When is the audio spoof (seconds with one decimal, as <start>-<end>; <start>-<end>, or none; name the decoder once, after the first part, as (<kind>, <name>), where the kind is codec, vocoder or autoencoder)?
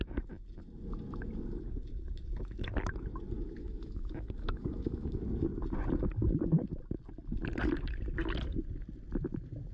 3.6-5.2 (autoencoder, DAC-VAE)